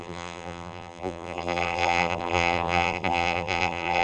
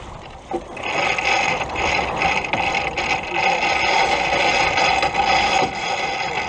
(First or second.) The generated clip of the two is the first